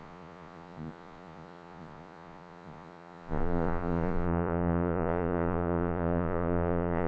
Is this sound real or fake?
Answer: fake